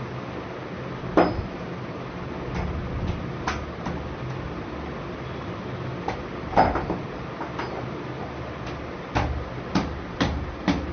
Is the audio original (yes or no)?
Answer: yes